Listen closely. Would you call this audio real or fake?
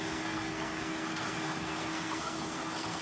fake